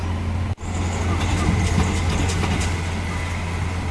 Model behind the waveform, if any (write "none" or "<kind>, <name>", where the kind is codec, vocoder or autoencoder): none